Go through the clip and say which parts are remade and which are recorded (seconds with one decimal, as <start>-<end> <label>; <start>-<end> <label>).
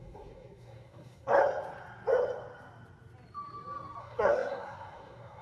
0.0-1.4 remade; 1.4-4.0 recorded; 4.0-5.4 remade